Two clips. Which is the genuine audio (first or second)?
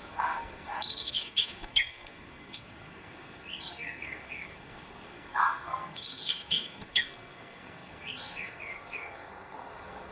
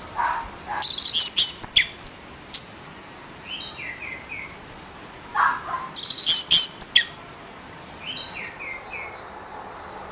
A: second